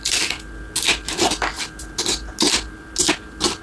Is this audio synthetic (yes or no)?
no